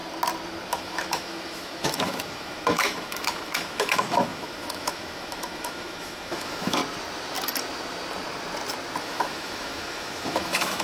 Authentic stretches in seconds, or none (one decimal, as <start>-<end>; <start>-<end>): 0.0-0.7; 6.8-9.0